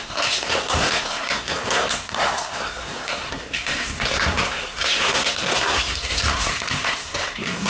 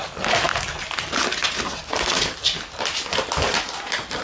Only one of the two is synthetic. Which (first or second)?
first